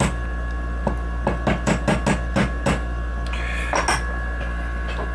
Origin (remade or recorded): recorded